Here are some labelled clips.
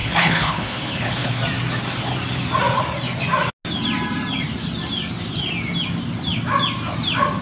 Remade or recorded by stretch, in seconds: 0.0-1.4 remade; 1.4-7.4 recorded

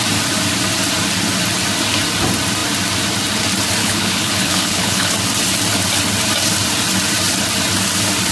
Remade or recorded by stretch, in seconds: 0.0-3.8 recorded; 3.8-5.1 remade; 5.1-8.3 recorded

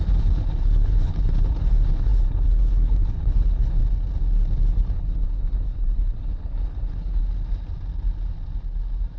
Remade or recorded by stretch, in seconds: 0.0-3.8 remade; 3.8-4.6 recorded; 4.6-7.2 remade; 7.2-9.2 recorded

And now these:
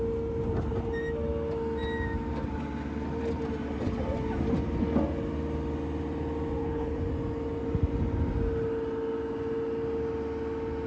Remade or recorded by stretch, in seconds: 0.0-6.6 recorded; 6.6-7.1 remade; 7.1-10.9 recorded

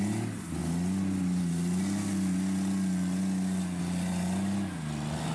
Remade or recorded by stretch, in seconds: 0.0-5.3 recorded

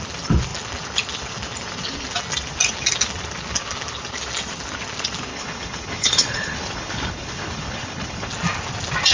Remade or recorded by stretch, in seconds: 0.0-5.3 recorded; 5.3-8.3 remade; 8.3-9.1 recorded

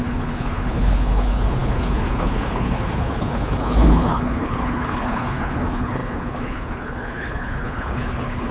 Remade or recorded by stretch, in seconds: 0.0-8.5 remade

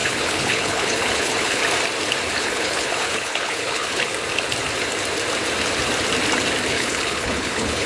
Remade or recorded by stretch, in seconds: 0.0-1.6 remade; 1.6-2.4 recorded; 2.4-4.1 remade; 4.1-6.7 recorded; 6.7-7.9 remade